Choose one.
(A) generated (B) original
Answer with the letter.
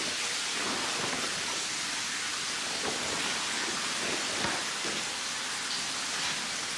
B